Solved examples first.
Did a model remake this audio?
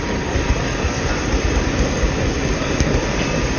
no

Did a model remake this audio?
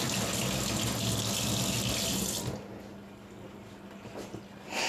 no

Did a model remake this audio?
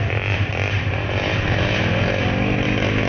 no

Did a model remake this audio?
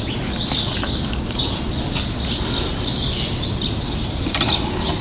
no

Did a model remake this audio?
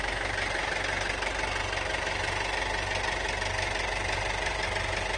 no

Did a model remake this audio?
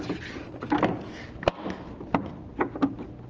no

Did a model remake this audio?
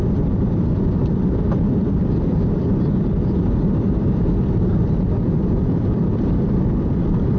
yes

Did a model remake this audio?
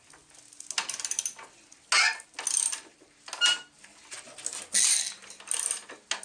no